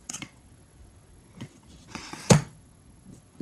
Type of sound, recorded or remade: remade